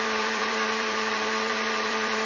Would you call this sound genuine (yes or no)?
no